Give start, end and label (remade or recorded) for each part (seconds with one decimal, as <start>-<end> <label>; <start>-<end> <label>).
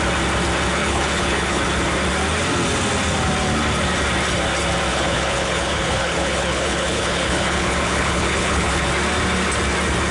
0.0-0.8 recorded; 0.8-1.6 remade; 1.6-4.9 recorded; 4.9-8.9 remade; 8.9-10.1 recorded